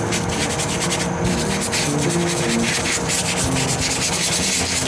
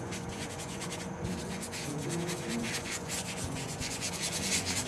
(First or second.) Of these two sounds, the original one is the first